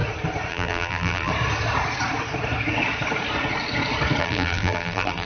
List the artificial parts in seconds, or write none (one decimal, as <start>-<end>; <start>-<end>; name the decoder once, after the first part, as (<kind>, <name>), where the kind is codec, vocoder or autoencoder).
0.5-1.3 (vocoder, BigVGAN v2); 4.2-5.3